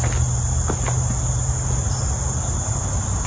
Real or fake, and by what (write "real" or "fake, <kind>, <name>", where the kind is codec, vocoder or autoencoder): real